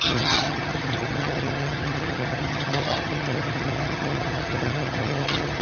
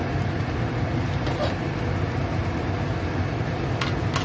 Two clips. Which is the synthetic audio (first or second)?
first